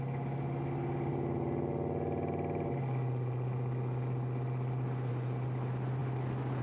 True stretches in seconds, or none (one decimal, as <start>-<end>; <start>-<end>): 0.0-6.6